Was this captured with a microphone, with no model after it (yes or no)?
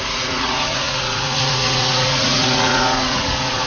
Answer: no